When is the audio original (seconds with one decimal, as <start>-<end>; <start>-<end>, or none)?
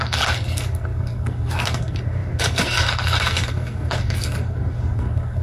none